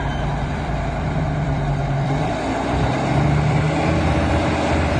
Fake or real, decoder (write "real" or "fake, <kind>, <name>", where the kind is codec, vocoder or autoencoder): fake, vocoder, BigVGAN v2